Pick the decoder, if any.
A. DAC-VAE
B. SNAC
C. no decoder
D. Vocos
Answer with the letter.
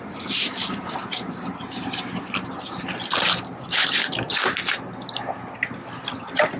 C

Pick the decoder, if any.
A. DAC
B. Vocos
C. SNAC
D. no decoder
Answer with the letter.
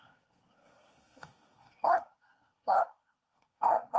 C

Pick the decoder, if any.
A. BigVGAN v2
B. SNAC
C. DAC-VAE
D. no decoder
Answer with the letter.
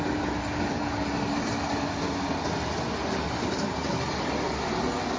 D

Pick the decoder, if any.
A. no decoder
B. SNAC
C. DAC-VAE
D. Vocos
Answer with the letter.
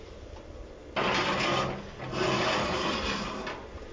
A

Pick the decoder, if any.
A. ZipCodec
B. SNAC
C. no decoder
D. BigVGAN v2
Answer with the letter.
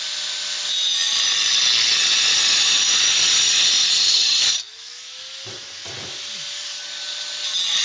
C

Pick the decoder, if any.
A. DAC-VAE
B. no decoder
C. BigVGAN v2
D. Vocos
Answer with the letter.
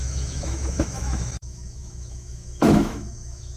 A